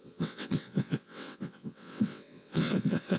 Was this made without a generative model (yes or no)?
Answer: no